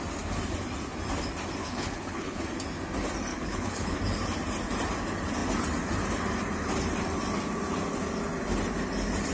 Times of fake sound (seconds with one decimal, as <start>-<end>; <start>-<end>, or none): 1.6-2.4; 3.3-4.0